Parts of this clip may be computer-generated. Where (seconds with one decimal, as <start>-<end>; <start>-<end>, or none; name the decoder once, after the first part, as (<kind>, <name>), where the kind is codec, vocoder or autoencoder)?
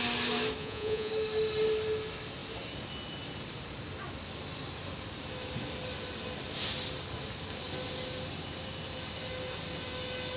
0.6-1.1 (vocoder, Vocos)